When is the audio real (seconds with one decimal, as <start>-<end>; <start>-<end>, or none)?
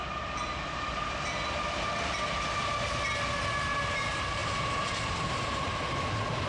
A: 0.0-3.9; 4.4-4.9